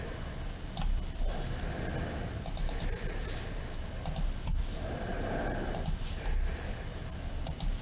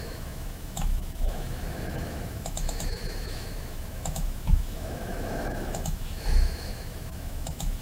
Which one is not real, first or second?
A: second